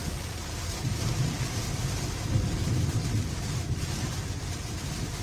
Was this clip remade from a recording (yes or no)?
no